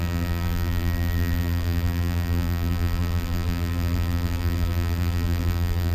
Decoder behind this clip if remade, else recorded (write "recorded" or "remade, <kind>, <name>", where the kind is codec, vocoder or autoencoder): remade, vocoder, BigVGAN v2